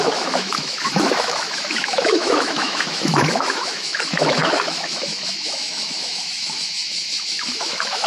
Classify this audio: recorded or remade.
remade